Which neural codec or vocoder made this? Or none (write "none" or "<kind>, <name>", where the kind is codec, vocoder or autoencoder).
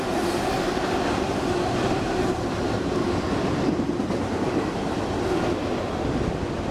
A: none